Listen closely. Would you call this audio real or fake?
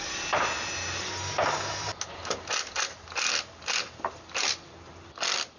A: real